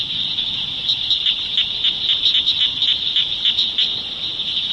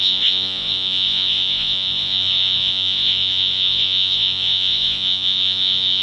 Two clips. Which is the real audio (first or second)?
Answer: first